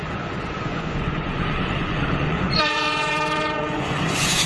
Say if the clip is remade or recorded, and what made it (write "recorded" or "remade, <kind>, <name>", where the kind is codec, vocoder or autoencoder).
remade, vocoder, Vocos